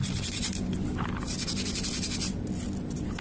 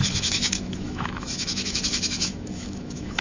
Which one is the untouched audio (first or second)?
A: first